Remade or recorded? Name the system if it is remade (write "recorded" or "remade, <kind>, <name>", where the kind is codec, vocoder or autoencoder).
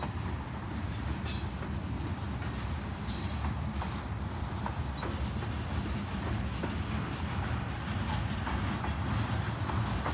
recorded